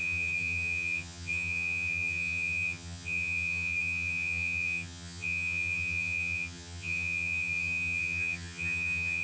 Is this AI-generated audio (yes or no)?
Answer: yes